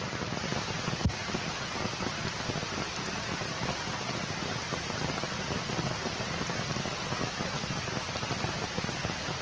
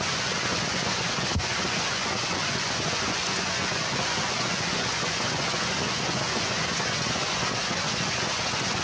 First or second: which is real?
first